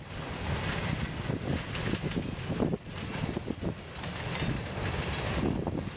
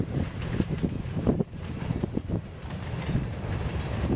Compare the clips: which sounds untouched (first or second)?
first